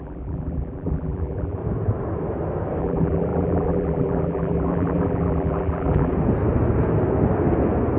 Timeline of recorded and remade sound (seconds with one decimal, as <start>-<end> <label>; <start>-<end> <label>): 0.0-1.6 remade; 1.6-2.8 recorded; 2.8-6.1 remade; 6.1-8.0 recorded